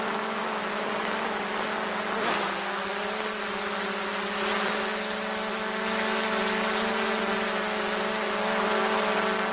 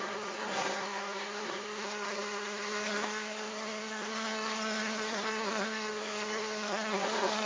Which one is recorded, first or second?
first